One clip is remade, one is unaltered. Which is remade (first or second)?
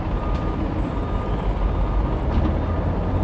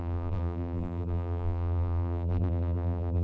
second